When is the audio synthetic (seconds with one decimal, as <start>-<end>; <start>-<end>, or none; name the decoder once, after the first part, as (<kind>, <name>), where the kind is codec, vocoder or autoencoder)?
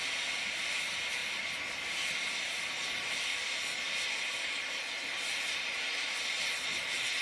none